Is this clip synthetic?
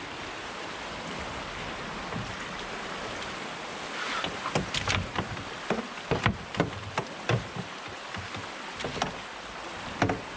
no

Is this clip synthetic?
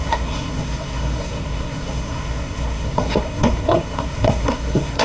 yes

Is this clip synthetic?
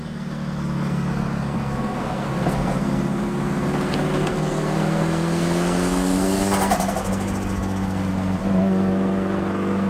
yes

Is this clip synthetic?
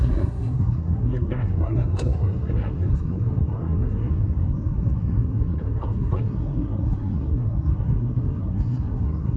yes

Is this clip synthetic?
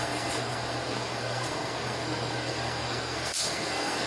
yes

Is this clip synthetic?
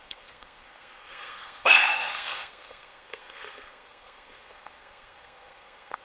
yes